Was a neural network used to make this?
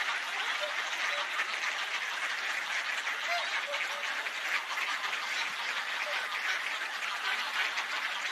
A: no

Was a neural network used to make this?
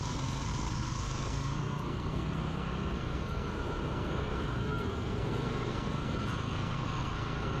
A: yes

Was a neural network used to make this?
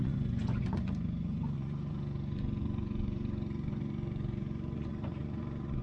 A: yes